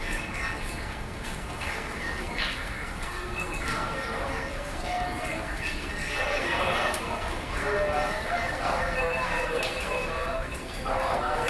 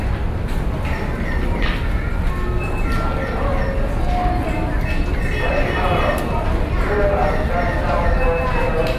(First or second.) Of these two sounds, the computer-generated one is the first